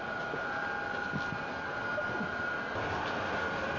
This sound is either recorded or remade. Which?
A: recorded